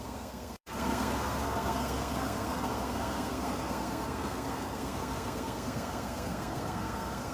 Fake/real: fake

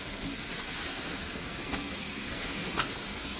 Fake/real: fake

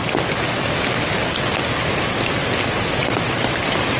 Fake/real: real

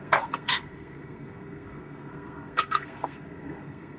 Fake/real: fake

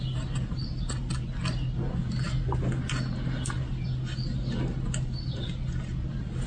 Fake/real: real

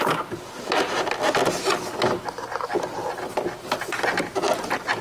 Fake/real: real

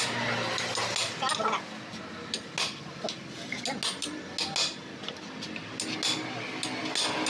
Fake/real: real